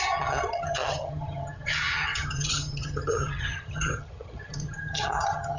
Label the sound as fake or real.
fake